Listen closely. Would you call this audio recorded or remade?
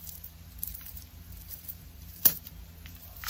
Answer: remade